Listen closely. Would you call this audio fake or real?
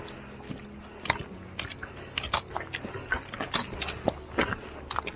real